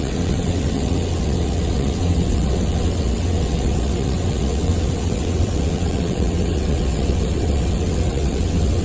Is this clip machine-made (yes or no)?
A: yes